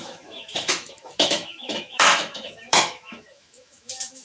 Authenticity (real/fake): fake